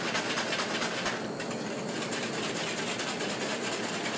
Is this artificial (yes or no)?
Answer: no